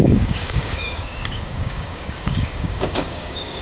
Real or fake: fake